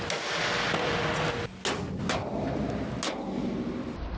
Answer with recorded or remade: recorded